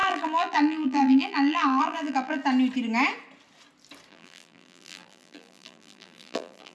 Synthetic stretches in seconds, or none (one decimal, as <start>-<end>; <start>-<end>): 0.0-2.4; 4.1-6.7